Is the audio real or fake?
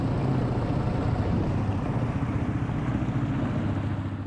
real